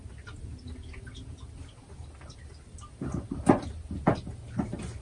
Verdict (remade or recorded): recorded